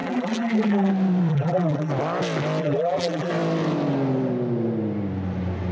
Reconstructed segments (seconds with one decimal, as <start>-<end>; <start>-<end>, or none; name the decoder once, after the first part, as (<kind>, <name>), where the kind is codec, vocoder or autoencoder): 0.0-0.9 (vocoder, BigVGAN v2); 1.3-1.9; 2.6-3.3